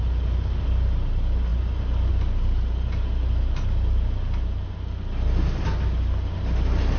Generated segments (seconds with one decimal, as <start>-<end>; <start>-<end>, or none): none